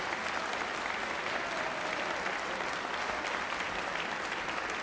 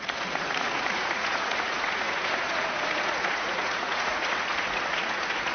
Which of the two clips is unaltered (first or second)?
first